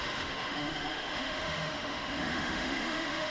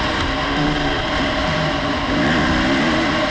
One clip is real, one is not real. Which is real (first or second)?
second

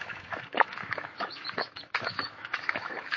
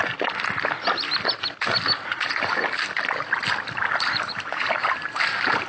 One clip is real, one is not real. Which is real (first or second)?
second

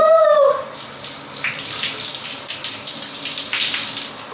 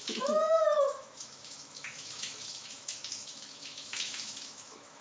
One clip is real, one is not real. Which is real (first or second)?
first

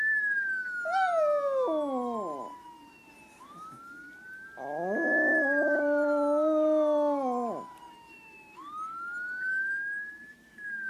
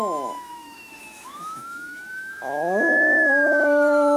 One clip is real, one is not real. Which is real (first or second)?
first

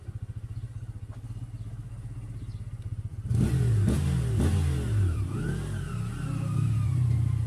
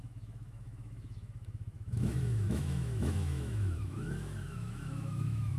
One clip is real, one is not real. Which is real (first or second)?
first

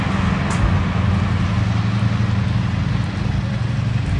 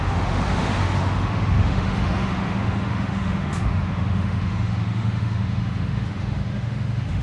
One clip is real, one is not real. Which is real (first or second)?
first